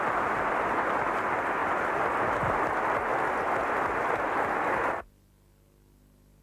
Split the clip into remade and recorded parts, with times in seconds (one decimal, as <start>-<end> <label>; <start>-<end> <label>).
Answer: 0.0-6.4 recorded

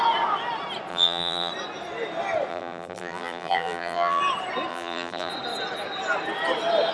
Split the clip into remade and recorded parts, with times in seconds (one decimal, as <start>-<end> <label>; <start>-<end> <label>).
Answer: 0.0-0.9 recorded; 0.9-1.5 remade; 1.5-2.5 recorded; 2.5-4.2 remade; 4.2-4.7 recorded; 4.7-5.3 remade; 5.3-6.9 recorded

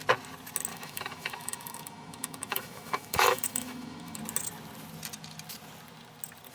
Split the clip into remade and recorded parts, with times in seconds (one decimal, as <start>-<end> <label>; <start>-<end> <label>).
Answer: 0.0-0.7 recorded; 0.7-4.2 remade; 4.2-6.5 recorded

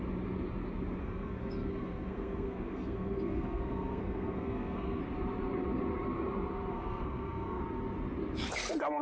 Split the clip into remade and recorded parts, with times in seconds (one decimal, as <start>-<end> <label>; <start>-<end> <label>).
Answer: 0.0-1.0 recorded; 1.0-5.0 remade; 5.0-6.7 recorded; 6.7-7.6 remade; 7.6-9.0 recorded

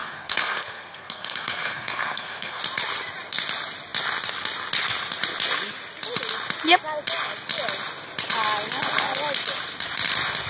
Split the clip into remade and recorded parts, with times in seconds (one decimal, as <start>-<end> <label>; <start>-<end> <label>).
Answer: 0.0-2.6 remade; 2.6-10.5 recorded